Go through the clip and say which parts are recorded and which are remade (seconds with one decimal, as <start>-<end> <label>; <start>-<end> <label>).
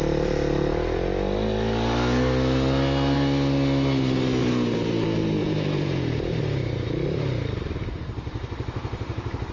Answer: 0.0-4.4 recorded; 4.4-9.5 remade